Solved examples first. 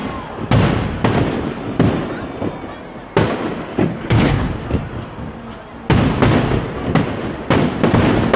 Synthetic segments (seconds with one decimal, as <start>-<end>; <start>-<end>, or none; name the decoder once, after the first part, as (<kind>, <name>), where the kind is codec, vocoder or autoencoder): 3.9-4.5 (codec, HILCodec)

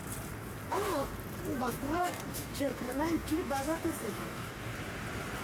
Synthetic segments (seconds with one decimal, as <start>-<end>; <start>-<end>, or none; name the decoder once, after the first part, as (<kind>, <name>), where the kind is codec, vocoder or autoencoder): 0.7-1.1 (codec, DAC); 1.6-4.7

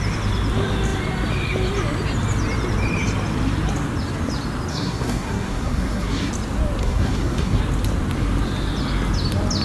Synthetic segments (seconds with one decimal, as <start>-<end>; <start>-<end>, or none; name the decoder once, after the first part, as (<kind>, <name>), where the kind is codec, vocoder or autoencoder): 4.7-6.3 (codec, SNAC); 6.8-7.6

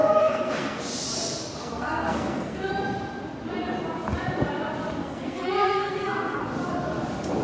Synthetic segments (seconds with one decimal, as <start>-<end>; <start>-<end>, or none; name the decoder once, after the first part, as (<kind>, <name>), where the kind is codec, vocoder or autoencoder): 0.0-0.8 (codec, SNAC); 1.6-2.7; 5.0-6.4